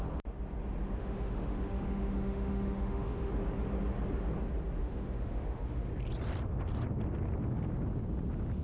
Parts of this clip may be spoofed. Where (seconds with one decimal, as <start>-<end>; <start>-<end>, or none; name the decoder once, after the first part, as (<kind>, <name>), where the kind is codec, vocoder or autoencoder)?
1.0-3.3 (autoencoder, DAC-VAE); 4.8-5.9